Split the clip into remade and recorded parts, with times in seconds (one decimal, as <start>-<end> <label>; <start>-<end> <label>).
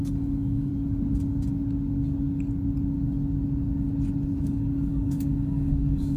0.0-0.7 remade; 0.7-4.4 recorded; 4.4-6.2 remade